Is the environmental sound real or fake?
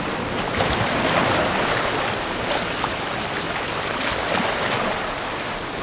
real